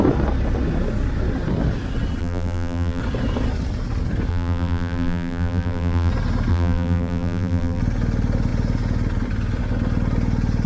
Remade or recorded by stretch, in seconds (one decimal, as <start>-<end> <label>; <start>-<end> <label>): 0.0-2.2 recorded; 2.2-3.0 remade; 3.0-4.3 recorded; 4.3-6.1 remade; 6.1-6.5 recorded; 6.5-7.8 remade; 7.8-10.7 recorded